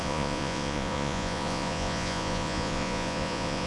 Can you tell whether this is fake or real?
fake